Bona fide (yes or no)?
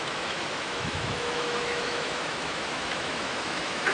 no